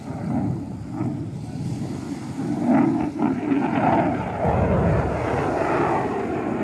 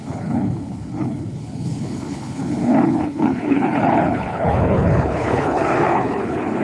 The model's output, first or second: second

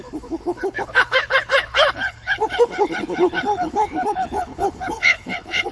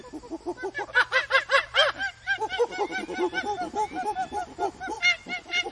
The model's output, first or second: first